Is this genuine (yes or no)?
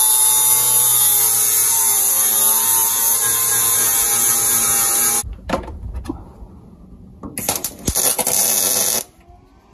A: yes